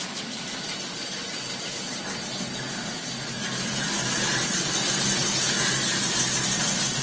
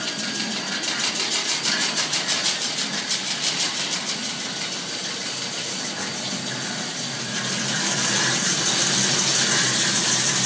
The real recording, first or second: first